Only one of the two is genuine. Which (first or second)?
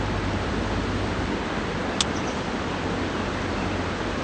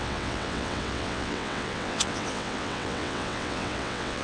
first